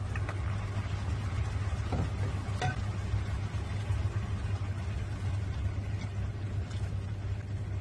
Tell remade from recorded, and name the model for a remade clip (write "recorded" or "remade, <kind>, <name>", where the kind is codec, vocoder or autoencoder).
recorded